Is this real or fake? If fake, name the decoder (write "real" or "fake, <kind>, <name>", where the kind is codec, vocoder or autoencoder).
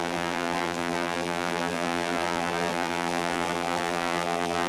fake, vocoder, BigVGAN v2